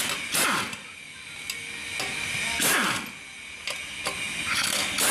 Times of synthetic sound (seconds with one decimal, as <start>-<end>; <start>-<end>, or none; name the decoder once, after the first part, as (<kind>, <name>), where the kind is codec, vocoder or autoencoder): none